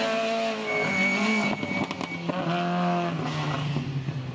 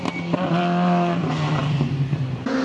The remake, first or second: second